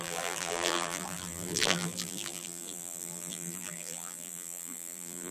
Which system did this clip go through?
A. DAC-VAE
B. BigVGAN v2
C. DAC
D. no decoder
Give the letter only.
B